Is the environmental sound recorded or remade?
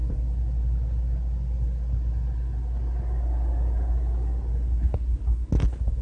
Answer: recorded